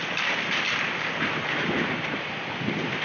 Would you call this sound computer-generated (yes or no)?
yes